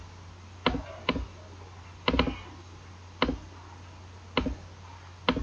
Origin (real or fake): real